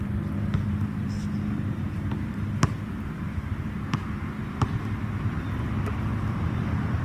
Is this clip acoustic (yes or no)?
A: yes